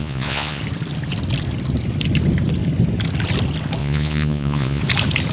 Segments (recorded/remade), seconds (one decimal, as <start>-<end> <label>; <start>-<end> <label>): 0.0-0.6 remade; 0.6-3.8 recorded; 3.8-4.8 remade; 4.8-5.3 recorded